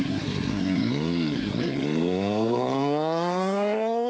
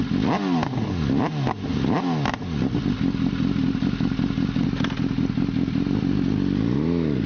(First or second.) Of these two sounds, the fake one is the first